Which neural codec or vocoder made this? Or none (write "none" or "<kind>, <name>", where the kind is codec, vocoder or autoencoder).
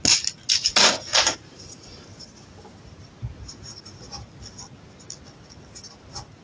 none